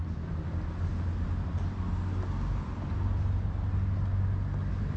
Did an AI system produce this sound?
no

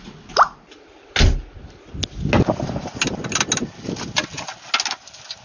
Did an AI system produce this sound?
no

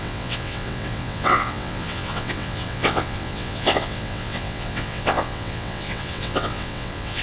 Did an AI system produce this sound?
yes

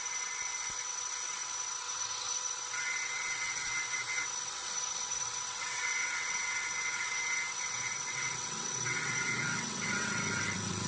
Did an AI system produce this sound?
yes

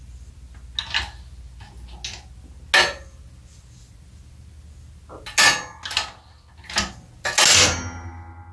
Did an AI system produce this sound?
no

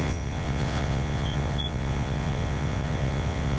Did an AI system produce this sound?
yes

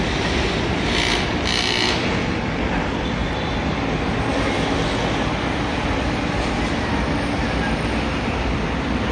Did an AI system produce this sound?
no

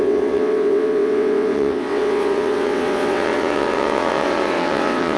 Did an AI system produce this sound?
yes